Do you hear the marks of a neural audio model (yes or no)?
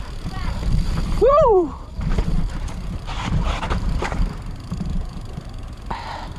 yes